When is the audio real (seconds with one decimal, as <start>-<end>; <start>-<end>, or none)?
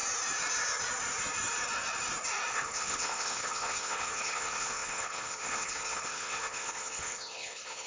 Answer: 0.0-2.5